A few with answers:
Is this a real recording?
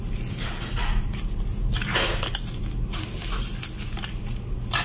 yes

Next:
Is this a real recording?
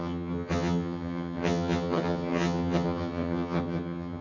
no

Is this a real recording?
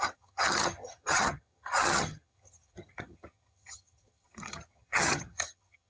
no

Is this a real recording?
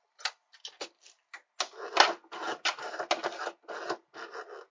yes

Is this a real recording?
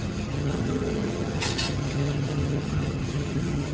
no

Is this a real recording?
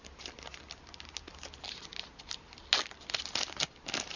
yes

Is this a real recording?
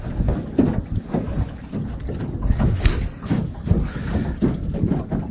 yes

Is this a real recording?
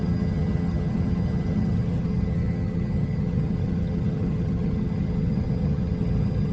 no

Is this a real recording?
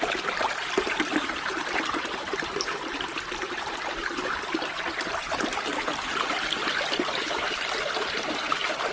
yes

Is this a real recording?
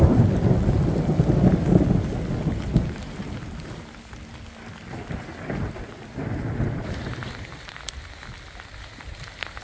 yes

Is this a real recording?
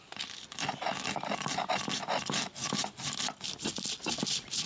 yes